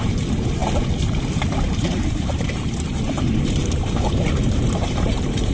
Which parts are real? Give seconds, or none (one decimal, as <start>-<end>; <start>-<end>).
0.6-1.8